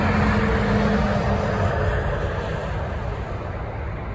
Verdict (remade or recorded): recorded